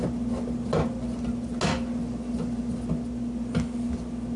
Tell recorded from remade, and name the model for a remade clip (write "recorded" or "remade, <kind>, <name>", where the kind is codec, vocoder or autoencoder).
recorded